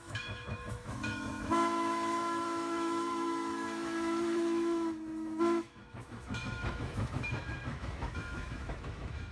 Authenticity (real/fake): fake